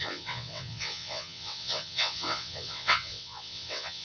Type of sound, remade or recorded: remade